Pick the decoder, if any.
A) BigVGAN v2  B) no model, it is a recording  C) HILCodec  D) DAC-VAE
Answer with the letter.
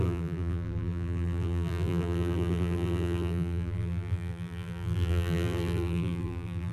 A